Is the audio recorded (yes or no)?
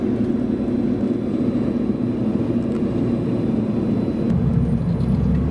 yes